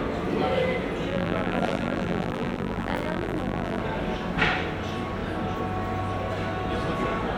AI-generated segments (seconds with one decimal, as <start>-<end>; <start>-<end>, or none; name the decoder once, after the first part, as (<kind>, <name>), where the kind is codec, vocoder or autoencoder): 1.1-3.8 (vocoder, BigVGAN v2)